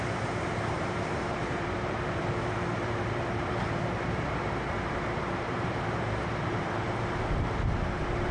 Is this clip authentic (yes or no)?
no